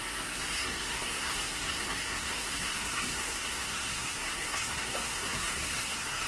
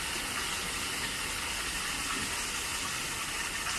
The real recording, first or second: second